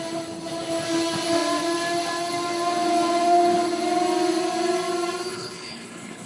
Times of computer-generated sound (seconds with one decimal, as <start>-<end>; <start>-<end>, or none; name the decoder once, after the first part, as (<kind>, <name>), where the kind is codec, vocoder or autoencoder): 5.3-6.3 (codec, HILCodec)